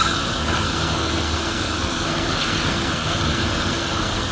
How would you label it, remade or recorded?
remade